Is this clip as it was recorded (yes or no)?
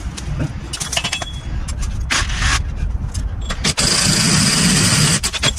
yes